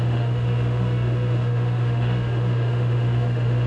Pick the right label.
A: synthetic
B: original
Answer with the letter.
A